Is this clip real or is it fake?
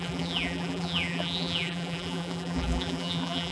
fake